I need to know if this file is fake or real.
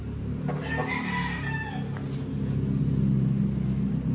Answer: real